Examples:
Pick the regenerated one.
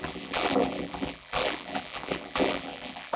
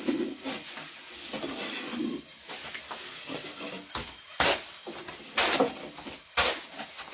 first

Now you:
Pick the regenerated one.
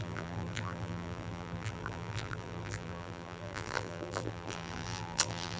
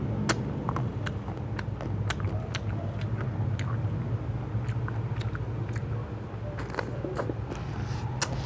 first